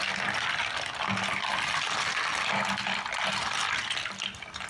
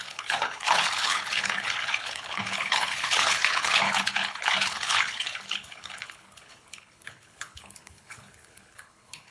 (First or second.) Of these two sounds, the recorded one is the first